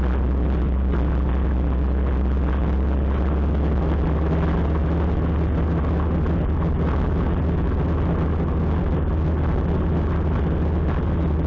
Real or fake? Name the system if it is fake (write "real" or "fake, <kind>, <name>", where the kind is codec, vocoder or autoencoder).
real